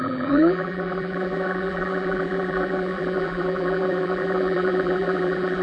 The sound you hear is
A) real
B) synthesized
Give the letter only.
B